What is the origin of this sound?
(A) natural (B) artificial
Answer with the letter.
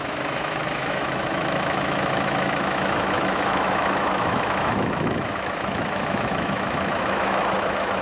B